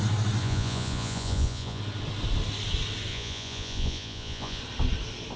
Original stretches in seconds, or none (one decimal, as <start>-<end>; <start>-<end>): 0.0-0.4; 1.8-3.1; 4.6-5.4